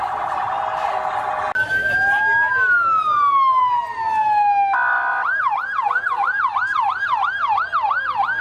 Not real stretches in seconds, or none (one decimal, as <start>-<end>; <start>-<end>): 7.4-8.0